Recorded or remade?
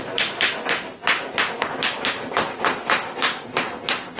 recorded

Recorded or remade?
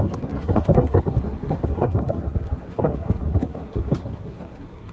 remade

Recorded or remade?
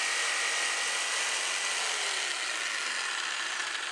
recorded